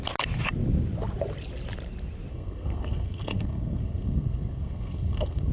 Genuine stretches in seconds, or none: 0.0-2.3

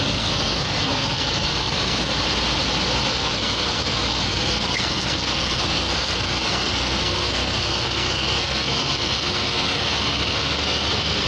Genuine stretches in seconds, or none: 2.1-3.1

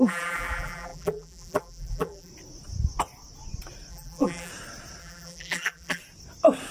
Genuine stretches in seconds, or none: 2.3-3.9; 4.5-5.0; 6.0-6.7

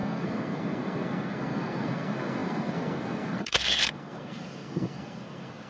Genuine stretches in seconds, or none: none

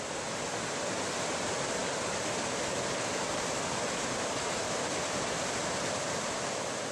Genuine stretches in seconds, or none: 0.0-6.9

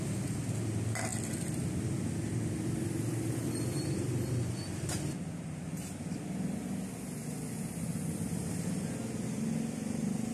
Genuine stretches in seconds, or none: 0.0-10.3

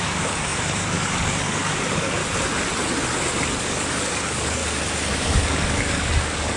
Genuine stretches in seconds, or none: 2.2-3.6; 4.6-5.1